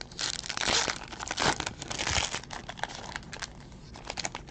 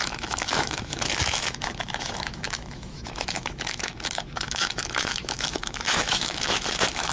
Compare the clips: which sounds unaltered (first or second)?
first